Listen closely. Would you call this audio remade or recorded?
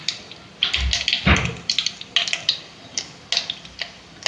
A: recorded